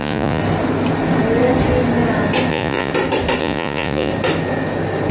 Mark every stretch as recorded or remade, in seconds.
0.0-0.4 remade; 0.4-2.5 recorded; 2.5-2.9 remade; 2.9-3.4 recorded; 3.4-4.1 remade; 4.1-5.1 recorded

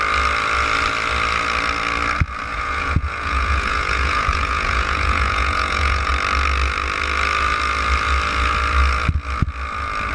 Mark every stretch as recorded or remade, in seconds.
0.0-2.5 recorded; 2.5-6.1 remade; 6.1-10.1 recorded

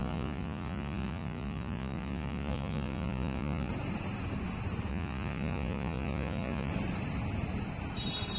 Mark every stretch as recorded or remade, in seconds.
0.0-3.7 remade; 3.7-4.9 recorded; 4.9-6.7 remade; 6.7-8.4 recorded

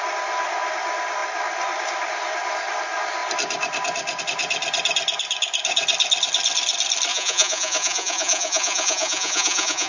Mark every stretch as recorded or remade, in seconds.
0.0-7.1 recorded; 7.1-9.9 remade

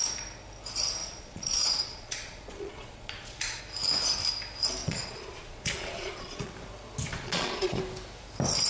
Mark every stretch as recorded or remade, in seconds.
0.0-1.0 recorded; 1.0-3.6 remade; 3.6-4.8 recorded; 4.8-6.5 remade; 6.5-7.1 recorded; 7.1-7.8 remade; 7.8-8.7 recorded

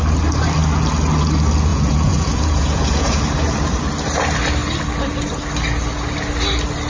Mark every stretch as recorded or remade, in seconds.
0.0-1.7 recorded; 1.7-3.2 remade; 3.2-6.9 recorded

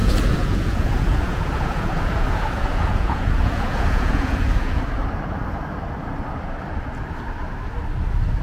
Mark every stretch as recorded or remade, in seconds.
0.0-4.8 remade; 4.8-8.4 recorded

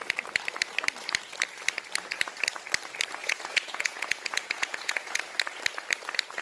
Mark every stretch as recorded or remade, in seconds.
0.0-3.2 recorded; 3.2-5.2 remade; 5.2-6.4 recorded